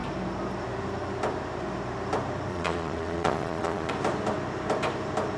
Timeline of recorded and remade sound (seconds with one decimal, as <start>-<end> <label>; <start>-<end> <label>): 0.0-2.5 recorded; 2.5-3.9 remade; 3.9-5.4 recorded